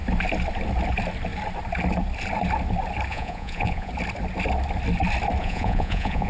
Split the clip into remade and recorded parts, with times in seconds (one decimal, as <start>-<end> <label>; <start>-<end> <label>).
0.0-3.1 recorded; 3.1-3.9 remade; 3.9-5.4 recorded; 5.4-6.3 remade